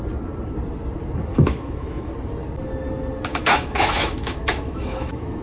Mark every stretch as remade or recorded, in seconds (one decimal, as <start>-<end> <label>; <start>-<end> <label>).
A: 0.0-1.3 recorded; 1.3-2.1 remade; 2.1-3.3 recorded; 3.3-5.4 remade